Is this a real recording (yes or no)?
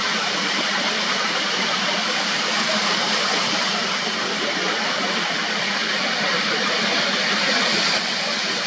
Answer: no